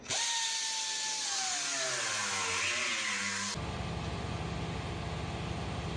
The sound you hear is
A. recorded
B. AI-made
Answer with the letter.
A